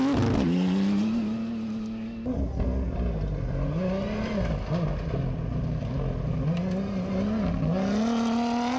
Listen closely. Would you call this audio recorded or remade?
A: recorded